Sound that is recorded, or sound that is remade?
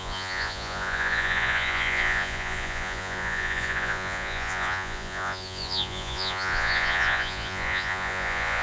remade